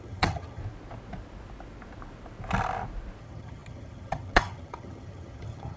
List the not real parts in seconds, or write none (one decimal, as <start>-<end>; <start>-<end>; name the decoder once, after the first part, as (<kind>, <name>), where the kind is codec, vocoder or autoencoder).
0.0-0.6 (vocoder, HiFi-GAN); 3.2-5.8